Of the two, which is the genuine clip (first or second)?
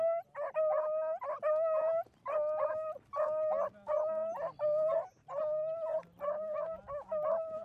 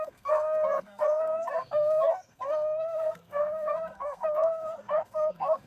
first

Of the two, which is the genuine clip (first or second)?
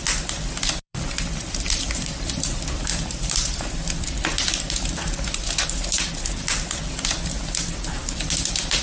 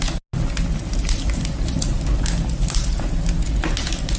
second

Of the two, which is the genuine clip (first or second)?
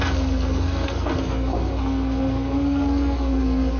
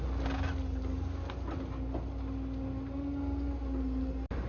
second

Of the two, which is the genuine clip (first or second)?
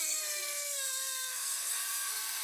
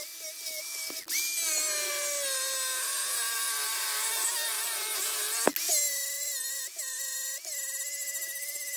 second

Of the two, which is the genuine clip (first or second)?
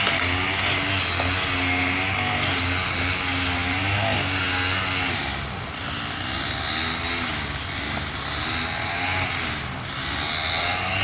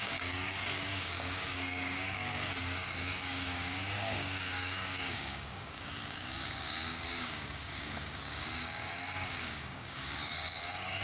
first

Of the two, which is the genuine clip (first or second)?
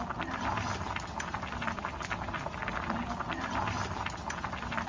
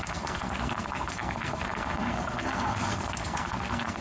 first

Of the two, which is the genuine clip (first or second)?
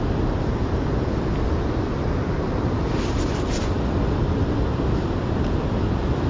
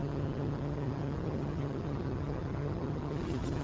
first